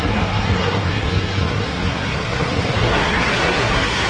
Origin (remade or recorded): remade